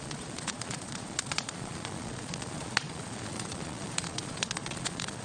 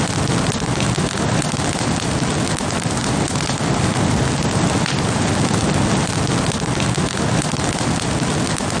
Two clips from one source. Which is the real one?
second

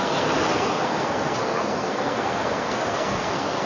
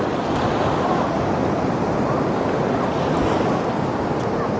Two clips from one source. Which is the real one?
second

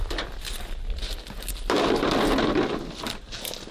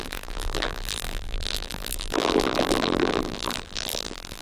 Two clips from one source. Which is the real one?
first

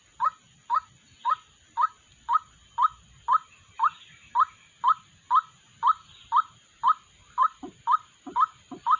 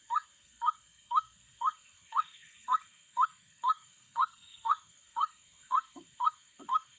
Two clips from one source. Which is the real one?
first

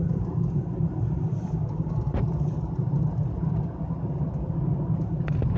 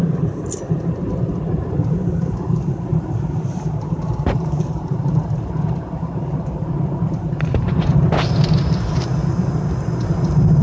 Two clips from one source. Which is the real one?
first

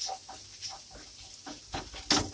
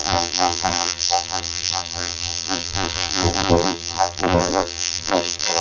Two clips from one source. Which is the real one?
first